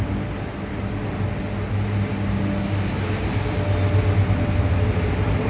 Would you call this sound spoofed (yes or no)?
no